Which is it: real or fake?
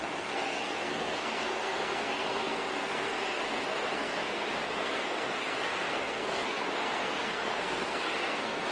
fake